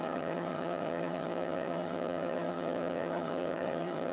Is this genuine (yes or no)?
no